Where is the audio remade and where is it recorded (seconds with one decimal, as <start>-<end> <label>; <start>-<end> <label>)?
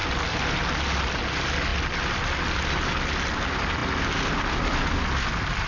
0.0-0.6 remade; 0.6-5.7 recorded